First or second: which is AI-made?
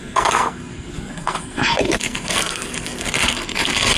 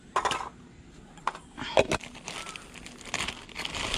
first